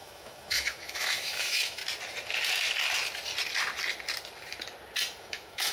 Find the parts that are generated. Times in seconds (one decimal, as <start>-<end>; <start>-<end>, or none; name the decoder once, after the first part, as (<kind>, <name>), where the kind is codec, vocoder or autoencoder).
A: 0.0-1.8 (autoencoder, DAC-VAE); 5.2-5.7